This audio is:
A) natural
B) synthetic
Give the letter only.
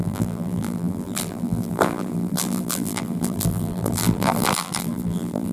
B